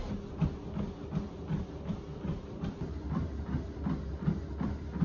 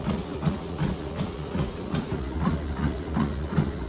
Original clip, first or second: first